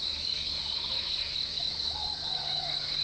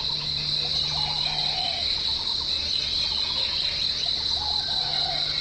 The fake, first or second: first